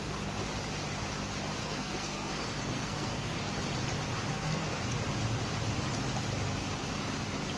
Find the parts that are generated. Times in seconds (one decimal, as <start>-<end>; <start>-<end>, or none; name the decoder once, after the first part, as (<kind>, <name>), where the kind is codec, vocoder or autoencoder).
1.6-3.5 (codec, SNAC); 4.3-4.8